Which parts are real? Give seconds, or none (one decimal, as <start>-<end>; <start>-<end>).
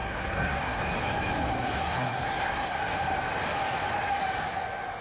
0.8-1.6; 2.8-5.0